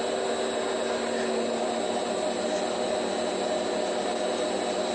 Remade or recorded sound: recorded